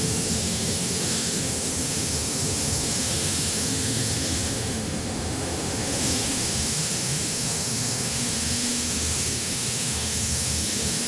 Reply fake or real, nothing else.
fake